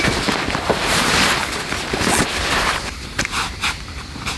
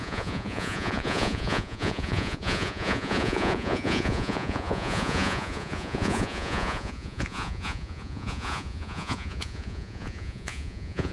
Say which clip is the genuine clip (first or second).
first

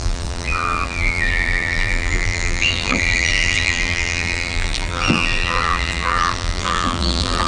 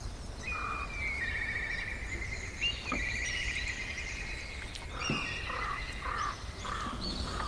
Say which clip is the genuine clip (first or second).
second